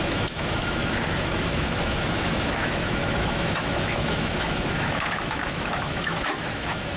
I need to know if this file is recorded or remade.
remade